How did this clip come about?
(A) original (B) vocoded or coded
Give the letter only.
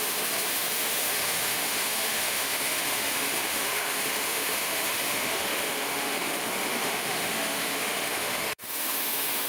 B